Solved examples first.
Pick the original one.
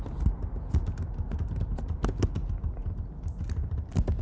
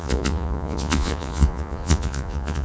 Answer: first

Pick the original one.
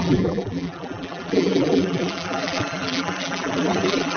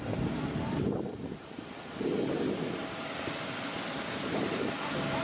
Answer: second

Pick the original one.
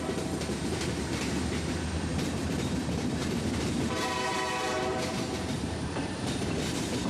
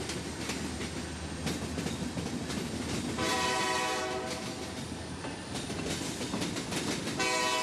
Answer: second